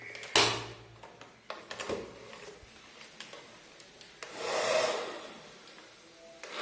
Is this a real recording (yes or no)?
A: yes